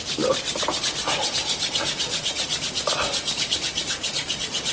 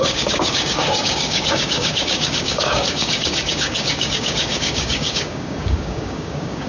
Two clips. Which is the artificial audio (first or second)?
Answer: second